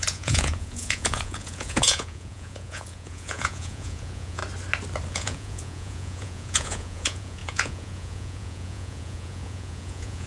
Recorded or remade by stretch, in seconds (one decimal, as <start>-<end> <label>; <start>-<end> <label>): 0.0-4.4 remade; 4.4-5.1 recorded; 5.1-10.3 remade